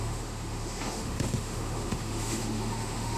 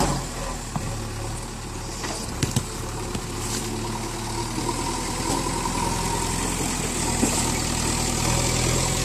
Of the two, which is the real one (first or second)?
second